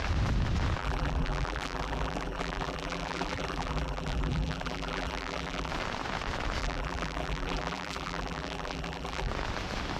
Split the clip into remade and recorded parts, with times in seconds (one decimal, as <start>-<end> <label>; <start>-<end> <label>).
0.0-0.8 recorded; 0.8-5.7 remade; 5.7-6.6 recorded; 6.6-9.3 remade; 9.3-10.0 recorded